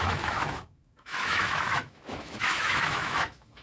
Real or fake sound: fake